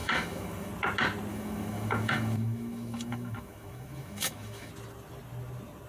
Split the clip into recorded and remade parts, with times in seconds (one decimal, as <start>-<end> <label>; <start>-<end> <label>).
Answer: 0.0-0.7 remade; 0.7-1.3 recorded; 1.3-4.7 remade; 4.7-5.9 recorded